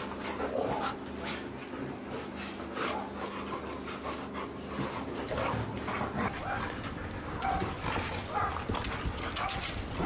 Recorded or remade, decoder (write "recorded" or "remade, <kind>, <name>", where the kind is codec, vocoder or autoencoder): recorded